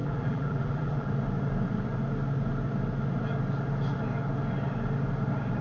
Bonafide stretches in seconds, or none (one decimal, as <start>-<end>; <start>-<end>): 1.1-5.6